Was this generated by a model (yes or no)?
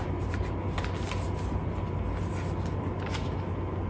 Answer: no